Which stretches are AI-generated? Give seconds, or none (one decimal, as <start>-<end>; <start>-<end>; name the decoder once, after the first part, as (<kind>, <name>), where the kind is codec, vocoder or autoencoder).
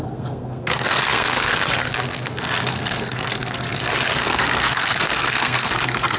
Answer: 0.0-6.2 (codec, SNAC)